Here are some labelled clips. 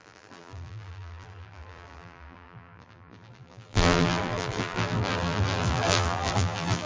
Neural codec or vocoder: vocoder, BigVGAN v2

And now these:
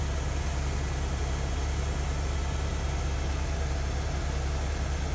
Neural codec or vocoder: none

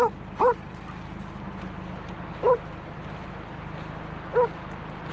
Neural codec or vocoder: none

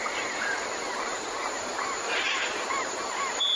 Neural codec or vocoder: vocoder, BigVGAN v2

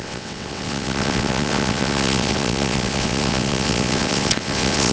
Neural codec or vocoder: vocoder, WaveNeXt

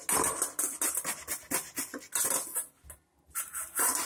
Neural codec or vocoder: none